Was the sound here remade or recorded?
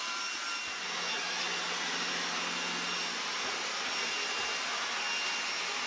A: recorded